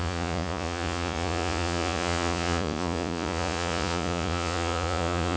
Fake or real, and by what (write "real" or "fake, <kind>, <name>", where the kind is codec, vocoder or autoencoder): fake, vocoder, Vocos